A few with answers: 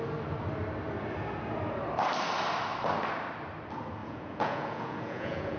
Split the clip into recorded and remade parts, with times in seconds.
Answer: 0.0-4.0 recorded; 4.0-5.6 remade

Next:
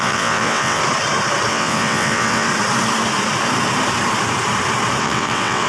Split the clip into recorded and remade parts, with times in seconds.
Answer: 0.0-0.8 remade; 0.8-1.5 recorded; 1.5-2.5 remade; 2.5-5.0 recorded; 5.0-5.7 remade

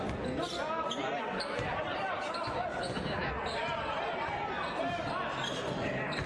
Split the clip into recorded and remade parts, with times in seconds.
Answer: 0.0-1.9 recorded; 1.9-4.3 remade; 4.3-6.3 recorded

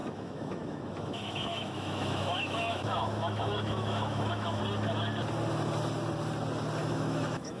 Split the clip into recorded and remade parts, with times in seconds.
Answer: 0.0-4.6 remade; 4.6-6.8 recorded; 6.8-7.6 remade

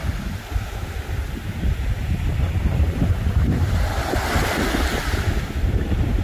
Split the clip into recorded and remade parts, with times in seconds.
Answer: 0.0-3.7 remade; 3.7-4.9 recorded; 4.9-6.2 remade